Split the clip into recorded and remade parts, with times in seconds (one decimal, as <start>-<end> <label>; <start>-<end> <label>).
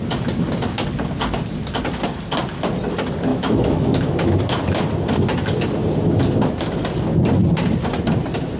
0.0-3.3 recorded; 3.3-4.4 remade; 4.4-8.6 recorded